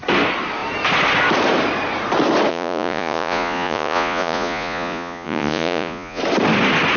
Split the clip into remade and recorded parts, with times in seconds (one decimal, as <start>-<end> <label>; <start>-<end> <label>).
0.0-2.5 recorded; 2.5-6.2 remade; 6.2-7.0 recorded